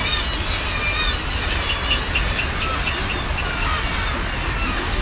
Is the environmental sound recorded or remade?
recorded